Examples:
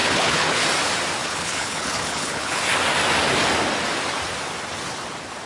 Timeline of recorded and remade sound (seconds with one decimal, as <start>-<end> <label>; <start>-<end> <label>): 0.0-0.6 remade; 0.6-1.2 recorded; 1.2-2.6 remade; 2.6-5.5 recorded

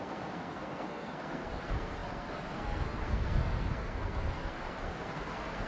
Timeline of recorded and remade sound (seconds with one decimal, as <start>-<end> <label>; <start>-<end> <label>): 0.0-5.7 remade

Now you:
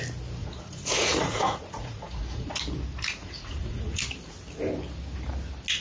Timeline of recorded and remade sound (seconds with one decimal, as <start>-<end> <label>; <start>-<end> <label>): 0.0-0.4 recorded; 0.4-2.6 remade; 2.6-3.2 recorded; 3.2-4.0 remade; 4.0-5.8 recorded